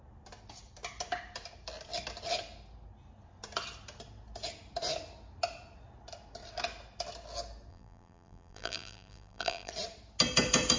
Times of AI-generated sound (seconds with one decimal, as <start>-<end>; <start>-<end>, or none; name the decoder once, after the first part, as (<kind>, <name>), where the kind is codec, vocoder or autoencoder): 7.7-9.7 (vocoder, BigVGAN v2)